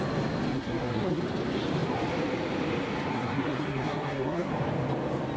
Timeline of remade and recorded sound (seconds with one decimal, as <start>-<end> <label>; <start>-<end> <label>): 0.0-0.5 recorded; 0.5-1.2 remade; 1.2-3.1 recorded; 3.1-4.5 remade; 4.5-5.4 recorded